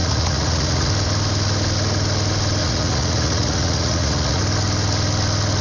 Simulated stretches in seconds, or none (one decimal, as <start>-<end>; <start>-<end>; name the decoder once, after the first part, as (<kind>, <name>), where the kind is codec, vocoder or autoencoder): 0.0-0.9 (vocoder, Vocos); 2.6-4.4